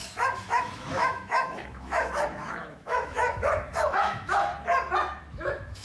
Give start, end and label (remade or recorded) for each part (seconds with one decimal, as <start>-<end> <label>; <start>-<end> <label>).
0.0-4.5 remade; 4.5-5.2 recorded; 5.2-5.8 remade